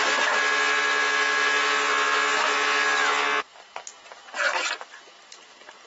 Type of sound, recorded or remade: recorded